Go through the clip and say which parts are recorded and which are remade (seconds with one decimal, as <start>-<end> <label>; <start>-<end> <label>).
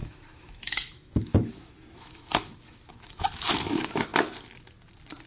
0.0-4.1 remade; 4.1-5.3 recorded